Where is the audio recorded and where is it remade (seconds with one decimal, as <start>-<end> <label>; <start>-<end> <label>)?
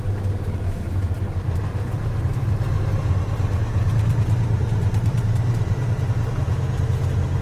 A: 0.0-1.7 recorded; 1.7-6.1 remade; 6.1-7.4 recorded